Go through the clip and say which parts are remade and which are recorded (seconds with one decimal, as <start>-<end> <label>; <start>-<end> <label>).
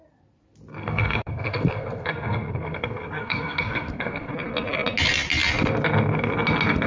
0.0-0.8 recorded; 0.8-4.3 remade; 4.3-6.9 recorded